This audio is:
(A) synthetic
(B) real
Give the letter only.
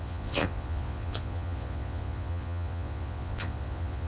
A